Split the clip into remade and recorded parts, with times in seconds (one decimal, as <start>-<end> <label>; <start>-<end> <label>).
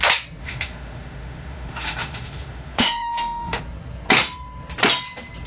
0.0-0.4 recorded; 0.4-3.6 remade; 3.6-5.5 recorded